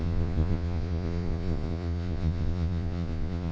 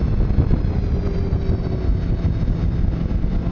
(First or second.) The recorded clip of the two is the second